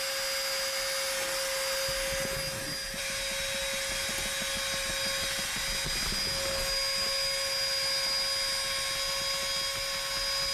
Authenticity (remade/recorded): recorded